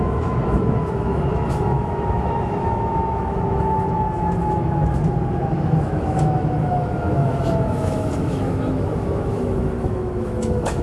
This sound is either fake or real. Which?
fake